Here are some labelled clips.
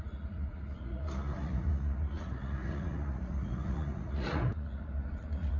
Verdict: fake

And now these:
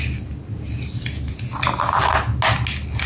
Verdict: real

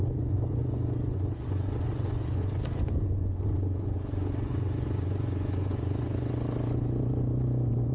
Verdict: fake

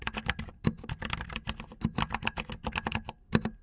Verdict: real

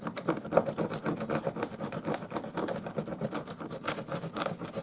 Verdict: real